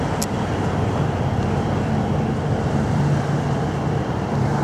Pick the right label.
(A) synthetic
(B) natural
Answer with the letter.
A